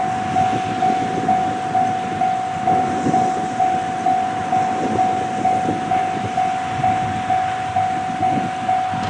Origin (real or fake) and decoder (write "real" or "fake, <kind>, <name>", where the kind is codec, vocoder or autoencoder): real